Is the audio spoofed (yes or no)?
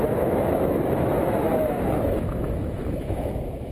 yes